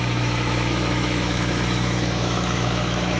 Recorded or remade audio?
remade